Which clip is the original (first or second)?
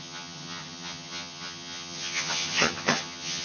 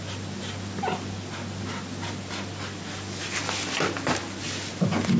second